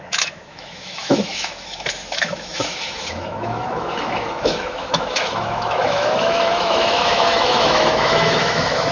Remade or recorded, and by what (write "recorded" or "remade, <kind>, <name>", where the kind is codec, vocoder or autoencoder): remade, autoencoder, DAC-VAE